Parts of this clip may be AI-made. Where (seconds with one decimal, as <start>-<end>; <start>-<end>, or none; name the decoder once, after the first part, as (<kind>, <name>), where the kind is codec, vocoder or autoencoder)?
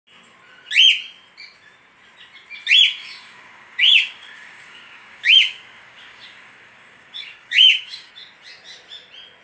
3.0-8.1 (codec, DAC)